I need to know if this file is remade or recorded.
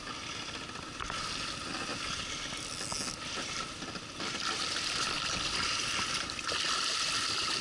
recorded